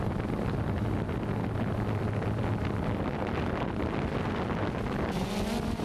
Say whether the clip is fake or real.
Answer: real